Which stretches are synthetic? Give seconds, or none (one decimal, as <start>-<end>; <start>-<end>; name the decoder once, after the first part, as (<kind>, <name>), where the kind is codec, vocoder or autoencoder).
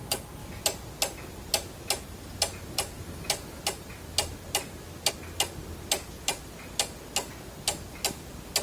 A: none